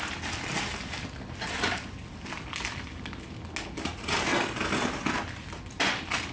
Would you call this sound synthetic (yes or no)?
no